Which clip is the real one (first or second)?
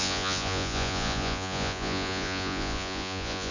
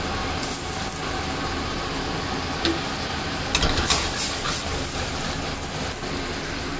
second